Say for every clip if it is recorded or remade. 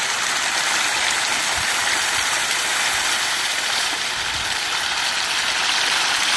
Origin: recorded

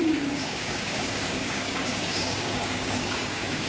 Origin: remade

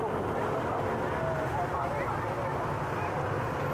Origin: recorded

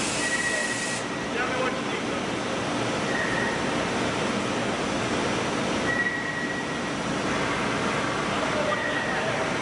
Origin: recorded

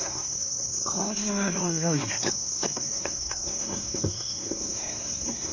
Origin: remade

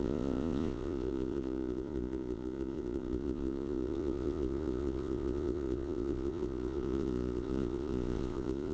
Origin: remade